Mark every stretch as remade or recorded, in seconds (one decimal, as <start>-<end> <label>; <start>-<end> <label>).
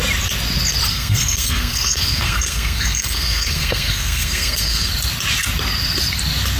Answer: 0.0-0.9 recorded; 0.9-4.9 remade; 4.9-6.6 recorded